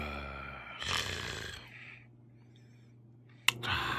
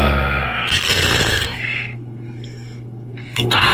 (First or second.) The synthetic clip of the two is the second